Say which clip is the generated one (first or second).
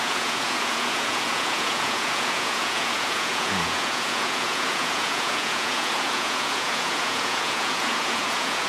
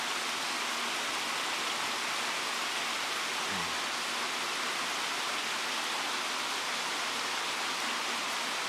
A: first